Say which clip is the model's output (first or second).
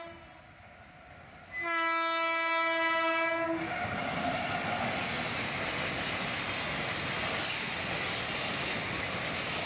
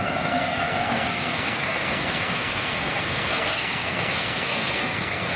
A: second